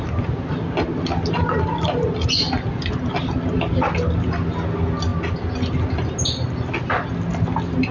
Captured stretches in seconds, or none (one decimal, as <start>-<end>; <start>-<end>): 0.0-7.9